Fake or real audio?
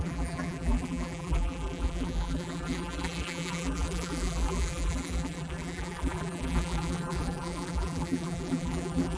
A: fake